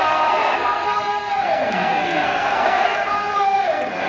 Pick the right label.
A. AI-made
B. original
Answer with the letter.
A